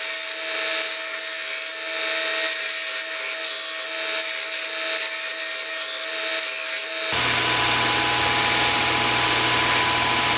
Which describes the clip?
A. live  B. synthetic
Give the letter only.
A